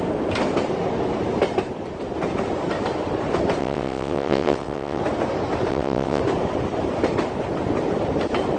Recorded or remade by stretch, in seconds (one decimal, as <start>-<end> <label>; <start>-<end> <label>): 0.0-3.6 recorded; 3.6-5.0 remade; 5.0-5.7 recorded; 5.7-6.2 remade; 6.2-8.6 recorded